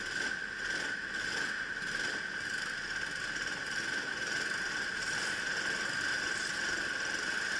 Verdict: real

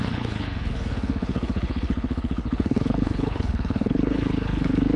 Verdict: fake